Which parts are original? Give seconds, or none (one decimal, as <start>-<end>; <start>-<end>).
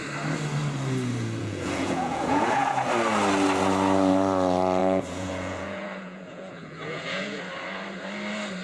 0.0-1.4; 2.9-4.8; 7.4-8.6